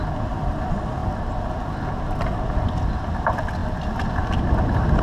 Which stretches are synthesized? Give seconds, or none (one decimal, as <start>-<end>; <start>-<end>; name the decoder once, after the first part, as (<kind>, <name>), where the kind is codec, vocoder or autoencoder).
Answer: none